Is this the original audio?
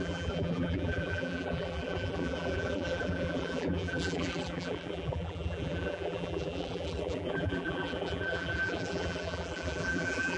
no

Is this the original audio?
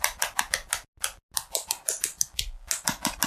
yes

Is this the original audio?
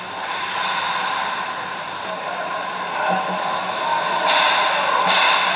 yes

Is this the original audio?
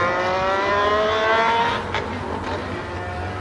yes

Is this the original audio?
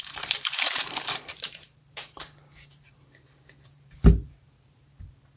no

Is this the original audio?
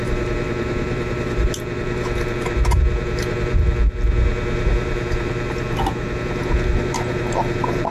no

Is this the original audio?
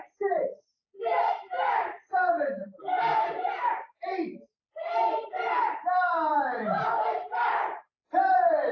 no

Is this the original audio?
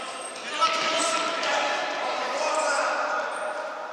no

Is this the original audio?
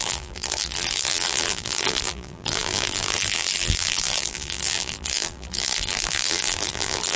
no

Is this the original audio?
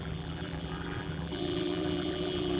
no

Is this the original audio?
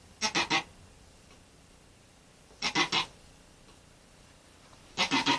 yes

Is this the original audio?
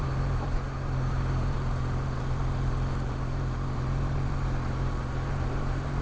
no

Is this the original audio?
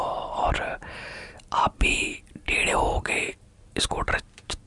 no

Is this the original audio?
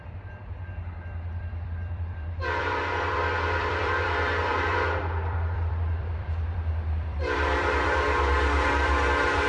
no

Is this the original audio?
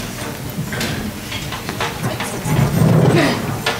yes